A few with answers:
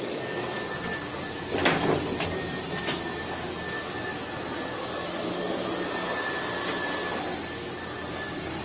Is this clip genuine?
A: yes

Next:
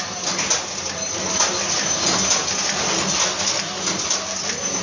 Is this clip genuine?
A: yes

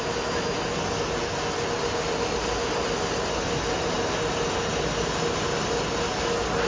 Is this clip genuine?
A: yes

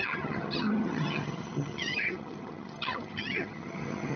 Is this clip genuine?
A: no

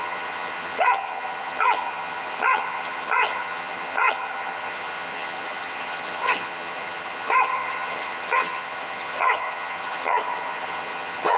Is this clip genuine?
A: no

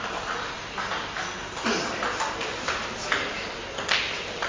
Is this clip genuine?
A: yes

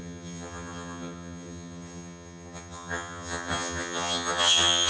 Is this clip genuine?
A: no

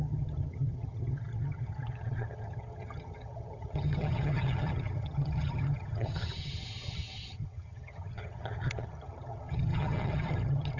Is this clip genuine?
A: no